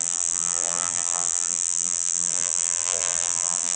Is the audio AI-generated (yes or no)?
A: yes